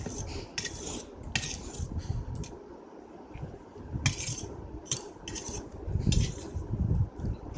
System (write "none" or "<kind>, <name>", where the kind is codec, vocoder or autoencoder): none